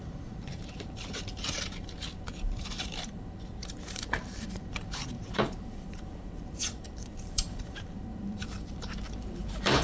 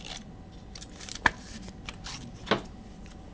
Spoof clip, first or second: first